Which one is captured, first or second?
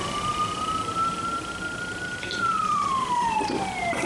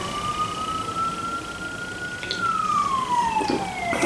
second